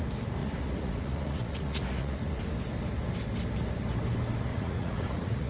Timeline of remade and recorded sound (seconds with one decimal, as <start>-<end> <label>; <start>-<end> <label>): 0.0-0.4 recorded; 0.4-2.4 remade; 2.4-4.5 recorded; 4.5-5.5 remade